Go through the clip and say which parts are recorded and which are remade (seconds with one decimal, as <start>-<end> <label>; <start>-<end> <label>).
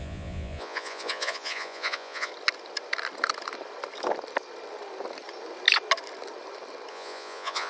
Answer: 0.0-2.3 remade; 2.3-6.9 recorded; 6.9-7.7 remade